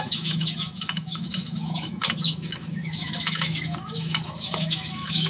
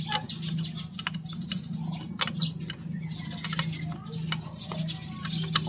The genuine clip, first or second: second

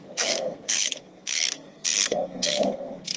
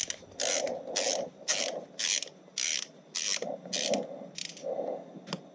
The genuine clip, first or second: second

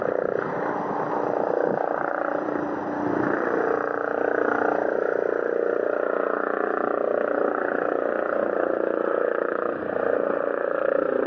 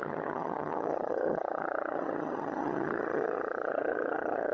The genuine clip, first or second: first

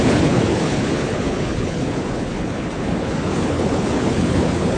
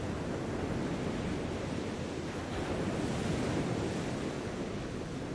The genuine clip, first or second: second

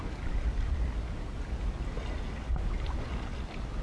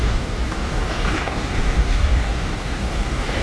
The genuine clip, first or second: first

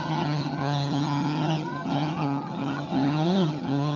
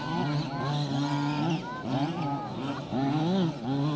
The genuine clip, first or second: second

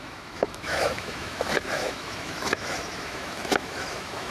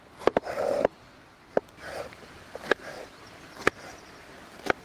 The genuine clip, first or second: second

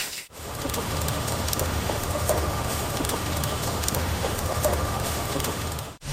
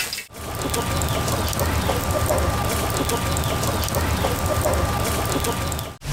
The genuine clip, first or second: second